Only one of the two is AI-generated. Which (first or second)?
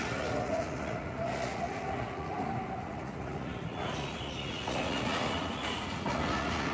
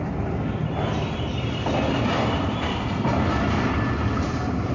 first